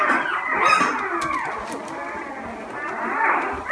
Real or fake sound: real